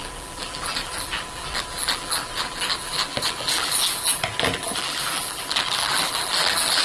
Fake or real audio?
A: fake